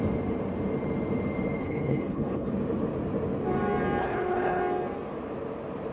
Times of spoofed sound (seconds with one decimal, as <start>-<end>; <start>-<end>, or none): 1.6-2.5; 4.0-4.6